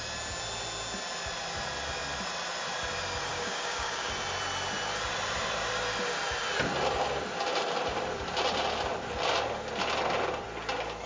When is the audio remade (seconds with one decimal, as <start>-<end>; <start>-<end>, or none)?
3.3-4.1